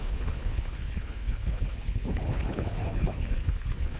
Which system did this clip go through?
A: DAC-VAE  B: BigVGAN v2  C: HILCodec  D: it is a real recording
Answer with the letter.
C